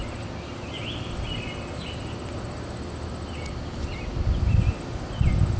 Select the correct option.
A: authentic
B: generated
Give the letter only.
A